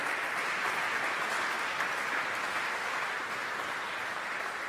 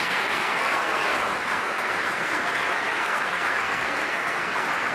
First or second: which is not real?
second